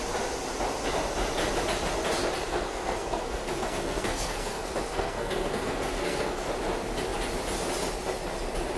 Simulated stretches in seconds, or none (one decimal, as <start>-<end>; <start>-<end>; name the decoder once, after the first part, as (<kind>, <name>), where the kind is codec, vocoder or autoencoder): 2.5-6.5 (codec, SNAC)